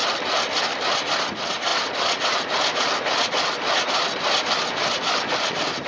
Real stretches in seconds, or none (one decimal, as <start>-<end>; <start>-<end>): 0.0-5.9